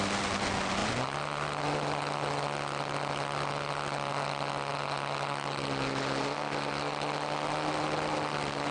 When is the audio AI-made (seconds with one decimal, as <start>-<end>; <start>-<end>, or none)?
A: none